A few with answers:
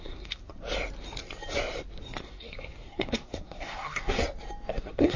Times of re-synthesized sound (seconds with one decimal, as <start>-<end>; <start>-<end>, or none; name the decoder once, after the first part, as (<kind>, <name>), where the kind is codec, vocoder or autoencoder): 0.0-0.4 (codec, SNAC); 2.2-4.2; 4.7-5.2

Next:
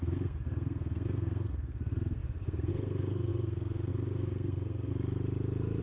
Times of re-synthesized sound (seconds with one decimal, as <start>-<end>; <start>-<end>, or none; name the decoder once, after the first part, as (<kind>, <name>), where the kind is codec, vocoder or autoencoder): 0.0-4.9 (codec, SNAC)

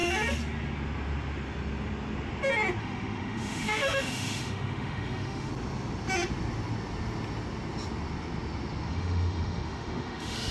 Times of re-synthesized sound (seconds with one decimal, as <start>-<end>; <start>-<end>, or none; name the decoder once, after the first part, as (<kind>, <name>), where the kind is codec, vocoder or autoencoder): 2.8-5.5 (autoencoder, DAC-VAE); 8.9-10.5

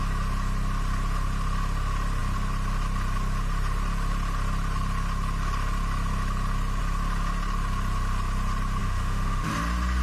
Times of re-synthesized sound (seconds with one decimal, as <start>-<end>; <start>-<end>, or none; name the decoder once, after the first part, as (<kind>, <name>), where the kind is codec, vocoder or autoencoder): 8.8-9.5 (autoencoder, DAC-VAE)

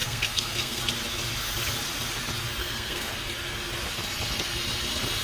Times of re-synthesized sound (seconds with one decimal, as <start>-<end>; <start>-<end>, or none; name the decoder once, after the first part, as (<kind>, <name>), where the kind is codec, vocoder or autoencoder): 0.0-0.8 (codec, SNAC); 2.6-3.1

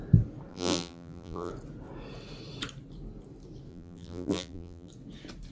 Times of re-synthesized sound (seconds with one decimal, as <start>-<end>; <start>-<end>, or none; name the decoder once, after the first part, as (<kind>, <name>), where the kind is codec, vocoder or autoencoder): 0.5-1.5 (vocoder, BigVGAN v2); 3.7-4.9

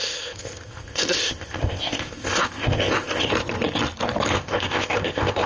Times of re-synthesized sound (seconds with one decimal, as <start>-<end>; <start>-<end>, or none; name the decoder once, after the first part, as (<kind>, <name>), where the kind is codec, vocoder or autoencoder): 0.0-3.3 (codec, ZipCodec); 4.3-5.5